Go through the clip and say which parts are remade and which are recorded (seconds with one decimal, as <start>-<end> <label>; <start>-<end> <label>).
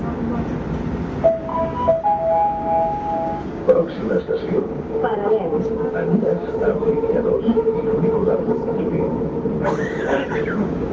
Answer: 0.0-1.5 recorded; 1.5-6.6 remade; 6.6-8.2 recorded; 8.2-10.9 remade